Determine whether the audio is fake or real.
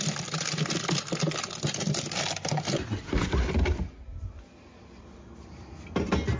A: real